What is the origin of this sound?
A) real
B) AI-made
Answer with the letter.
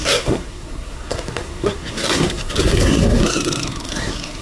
B